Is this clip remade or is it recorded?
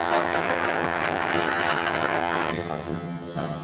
remade